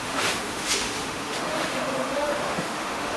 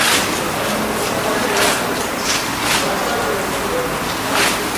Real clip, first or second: second